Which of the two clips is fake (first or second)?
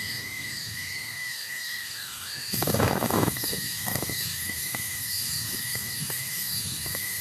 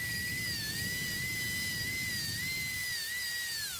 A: first